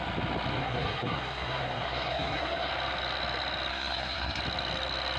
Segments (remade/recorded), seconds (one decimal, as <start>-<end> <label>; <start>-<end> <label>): 0.0-0.6 recorded; 0.6-2.7 remade; 2.7-3.7 recorded; 3.7-4.4 remade; 4.4-5.2 recorded